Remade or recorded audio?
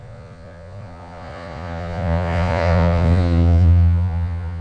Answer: remade